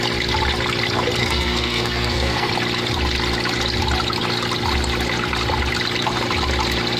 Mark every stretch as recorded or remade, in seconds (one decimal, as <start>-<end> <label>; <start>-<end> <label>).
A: 0.0-1.2 recorded; 1.2-2.5 remade; 2.5-7.0 recorded